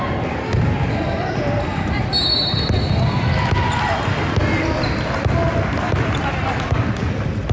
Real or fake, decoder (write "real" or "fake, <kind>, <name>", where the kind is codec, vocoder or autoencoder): real